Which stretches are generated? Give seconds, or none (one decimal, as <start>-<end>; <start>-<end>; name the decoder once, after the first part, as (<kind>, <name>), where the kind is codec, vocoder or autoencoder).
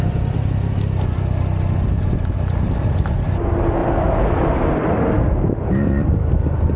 3.8-5.0 (vocoder, BigVGAN v2)